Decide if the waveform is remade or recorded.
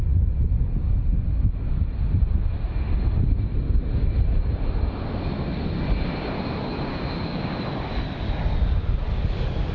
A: recorded